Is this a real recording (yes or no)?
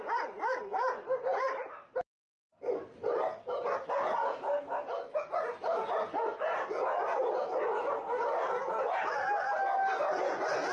yes